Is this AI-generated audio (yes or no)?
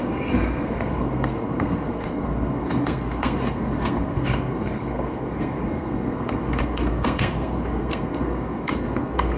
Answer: yes